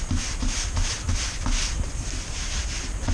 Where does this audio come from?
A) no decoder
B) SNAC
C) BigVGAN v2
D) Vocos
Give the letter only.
A